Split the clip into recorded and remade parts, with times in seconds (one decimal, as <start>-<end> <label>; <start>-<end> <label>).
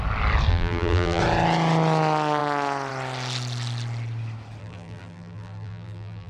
0.0-0.5 recorded; 0.5-1.2 remade; 1.2-4.6 recorded; 4.6-6.3 remade